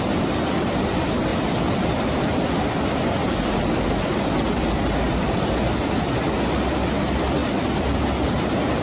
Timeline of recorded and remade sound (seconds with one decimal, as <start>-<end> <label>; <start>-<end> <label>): 0.0-1.3 recorded; 1.3-5.4 remade; 5.4-7.4 recorded; 7.4-8.0 remade; 8.0-8.8 recorded